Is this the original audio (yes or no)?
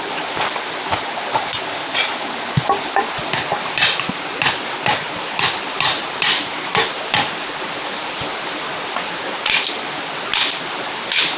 yes